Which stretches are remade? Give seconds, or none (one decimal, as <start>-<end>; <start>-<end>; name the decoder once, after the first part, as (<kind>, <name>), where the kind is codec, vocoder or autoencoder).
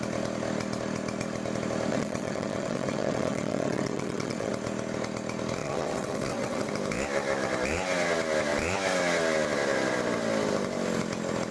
1.9-4.5 (vocoder, WaveNeXt); 5.6-6.7